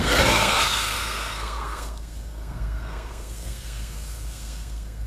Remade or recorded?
remade